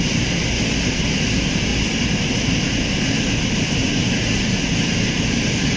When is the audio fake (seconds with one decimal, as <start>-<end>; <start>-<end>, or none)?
none